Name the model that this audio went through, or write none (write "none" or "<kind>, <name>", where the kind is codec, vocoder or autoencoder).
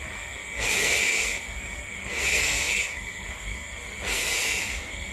codec, SNAC